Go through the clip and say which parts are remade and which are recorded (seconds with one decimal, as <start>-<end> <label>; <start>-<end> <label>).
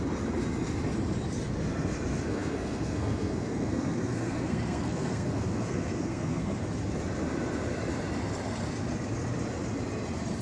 0.0-2.3 recorded; 2.3-6.6 remade; 6.6-10.4 recorded